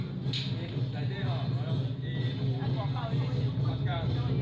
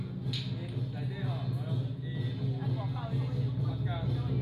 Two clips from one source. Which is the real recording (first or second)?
second